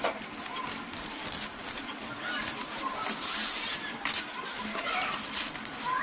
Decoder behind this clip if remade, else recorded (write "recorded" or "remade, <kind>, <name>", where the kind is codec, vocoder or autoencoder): remade, vocoder, BigVGAN v2